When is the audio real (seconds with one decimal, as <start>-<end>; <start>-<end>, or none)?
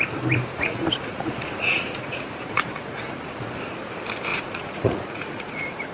0.0-0.5; 3.5-4.3